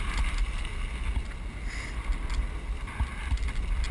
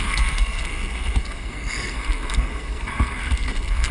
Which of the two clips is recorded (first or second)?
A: first